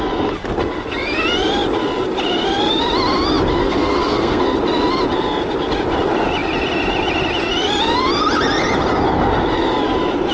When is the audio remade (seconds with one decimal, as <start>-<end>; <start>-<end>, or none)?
3.6-4.4